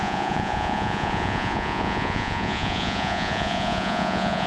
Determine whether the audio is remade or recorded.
remade